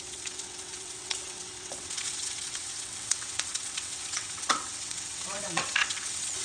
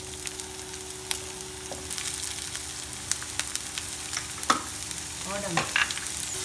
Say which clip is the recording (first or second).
second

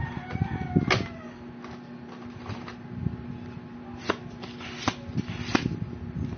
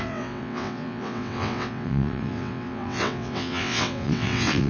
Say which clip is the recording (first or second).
first